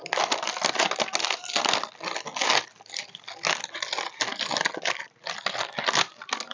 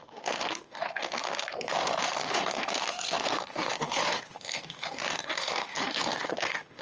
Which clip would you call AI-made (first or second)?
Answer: second